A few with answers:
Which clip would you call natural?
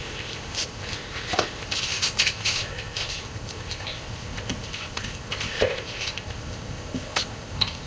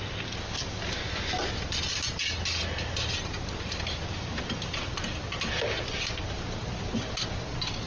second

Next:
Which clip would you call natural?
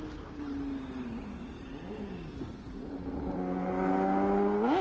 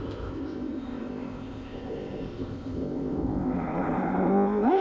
first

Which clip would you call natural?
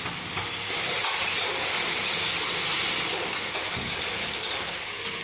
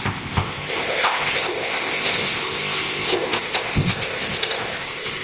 first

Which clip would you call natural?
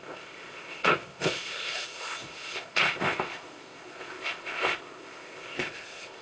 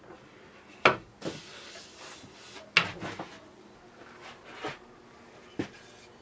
second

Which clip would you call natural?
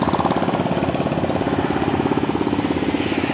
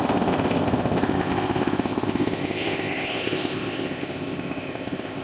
first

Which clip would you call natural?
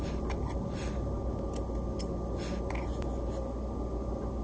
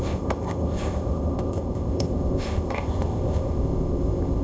first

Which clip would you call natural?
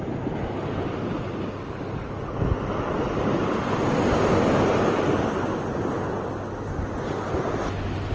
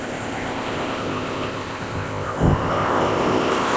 first